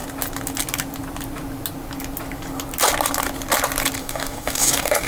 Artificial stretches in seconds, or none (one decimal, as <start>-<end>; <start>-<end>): 4.0-5.1